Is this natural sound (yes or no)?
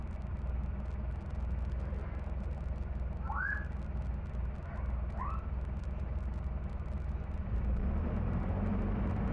yes